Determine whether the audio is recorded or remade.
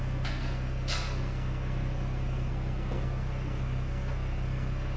remade